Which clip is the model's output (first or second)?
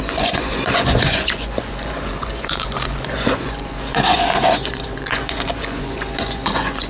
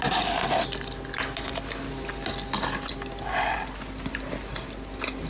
first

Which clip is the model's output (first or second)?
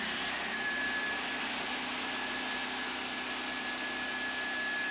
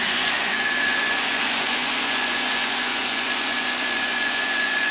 second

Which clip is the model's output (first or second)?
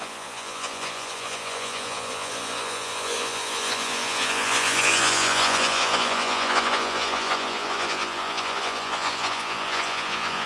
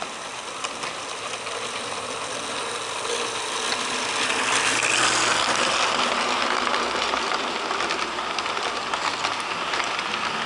first